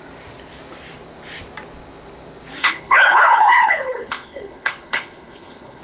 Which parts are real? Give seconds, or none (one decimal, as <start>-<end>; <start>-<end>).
0.0-2.6